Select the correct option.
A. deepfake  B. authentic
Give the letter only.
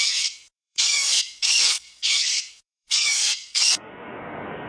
A